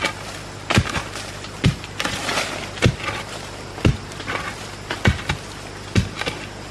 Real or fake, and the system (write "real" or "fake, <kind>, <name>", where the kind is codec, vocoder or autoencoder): real